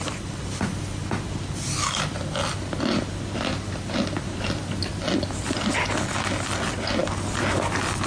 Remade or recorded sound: recorded